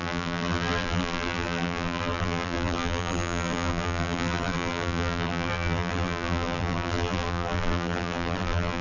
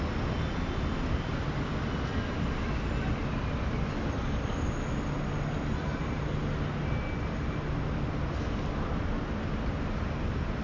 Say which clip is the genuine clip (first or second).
second